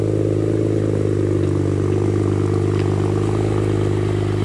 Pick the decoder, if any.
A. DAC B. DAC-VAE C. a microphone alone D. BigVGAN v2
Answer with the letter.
C